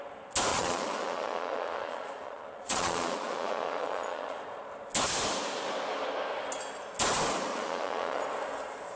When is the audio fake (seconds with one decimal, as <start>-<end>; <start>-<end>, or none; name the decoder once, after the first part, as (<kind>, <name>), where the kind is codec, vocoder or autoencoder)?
0.5-4.4 (vocoder, Vocos); 7.5-8.2